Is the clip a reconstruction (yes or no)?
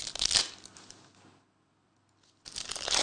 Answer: no